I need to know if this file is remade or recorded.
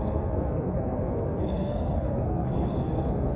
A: remade